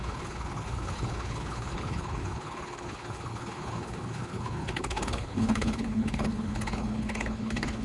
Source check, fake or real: fake